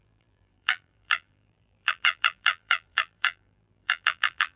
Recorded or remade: remade